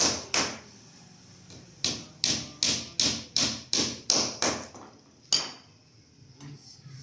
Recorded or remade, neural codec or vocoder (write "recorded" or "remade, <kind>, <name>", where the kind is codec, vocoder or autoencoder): recorded